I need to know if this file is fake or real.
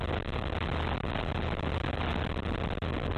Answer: real